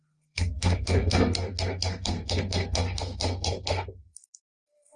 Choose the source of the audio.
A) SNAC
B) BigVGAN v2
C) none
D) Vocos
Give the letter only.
A